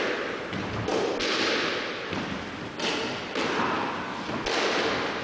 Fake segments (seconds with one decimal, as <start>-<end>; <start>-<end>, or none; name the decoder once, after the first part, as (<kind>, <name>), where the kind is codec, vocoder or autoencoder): none